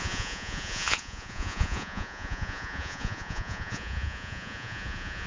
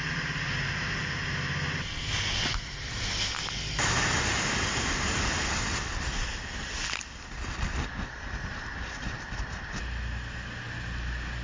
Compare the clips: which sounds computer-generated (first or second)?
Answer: first